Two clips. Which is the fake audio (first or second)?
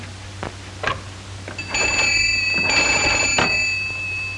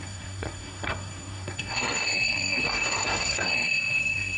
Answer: second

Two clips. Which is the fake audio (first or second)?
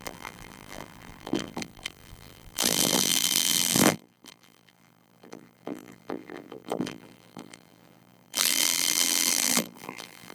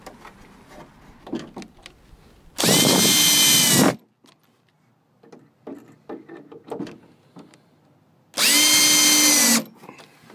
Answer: first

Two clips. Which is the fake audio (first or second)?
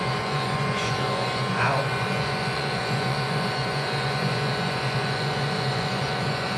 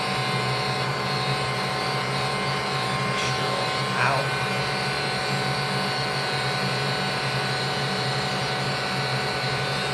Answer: first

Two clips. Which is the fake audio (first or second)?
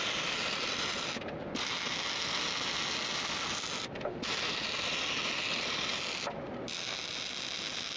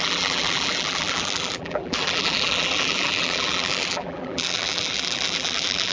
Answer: second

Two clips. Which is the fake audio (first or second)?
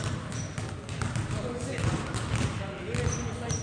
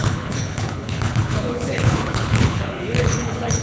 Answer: second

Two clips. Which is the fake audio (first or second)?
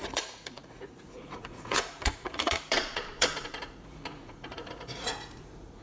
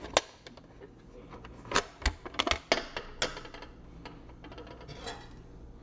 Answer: first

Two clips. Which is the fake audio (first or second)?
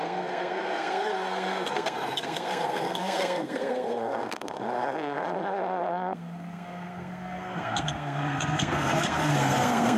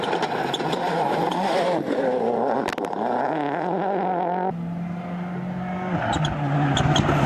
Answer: first